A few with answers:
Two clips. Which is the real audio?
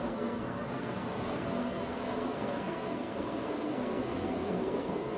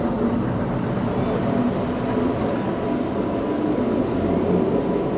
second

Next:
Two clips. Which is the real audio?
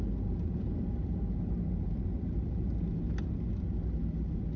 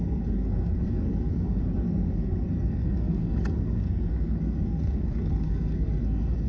first